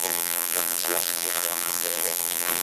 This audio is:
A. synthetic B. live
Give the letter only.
A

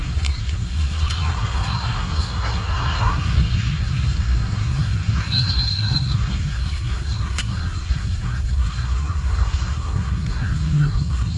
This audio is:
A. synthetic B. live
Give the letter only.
A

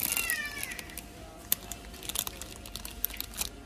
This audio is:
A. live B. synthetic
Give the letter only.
A